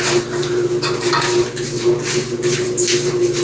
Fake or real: real